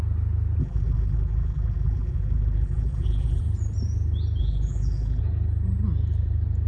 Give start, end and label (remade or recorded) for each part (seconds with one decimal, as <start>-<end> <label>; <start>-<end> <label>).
0.0-0.6 recorded; 0.6-3.4 remade; 3.4-4.4 recorded; 4.4-5.2 remade; 5.2-6.7 recorded